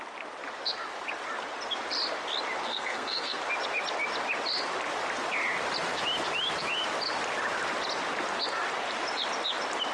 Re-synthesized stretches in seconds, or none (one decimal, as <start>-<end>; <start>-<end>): 2.7-3.4